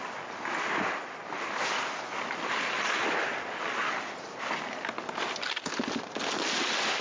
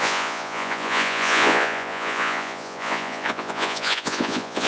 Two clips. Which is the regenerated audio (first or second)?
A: second